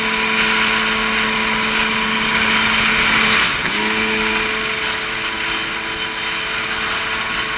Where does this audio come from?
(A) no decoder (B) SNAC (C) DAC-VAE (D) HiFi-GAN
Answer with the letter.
A